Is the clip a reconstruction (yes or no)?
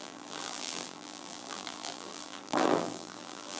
yes